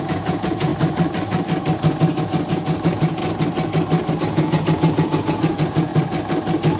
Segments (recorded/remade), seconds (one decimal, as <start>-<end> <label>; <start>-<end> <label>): 0.0-0.7 remade; 0.7-2.2 recorded; 2.2-3.2 remade; 3.2-4.1 recorded; 4.1-5.9 remade; 5.9-6.8 recorded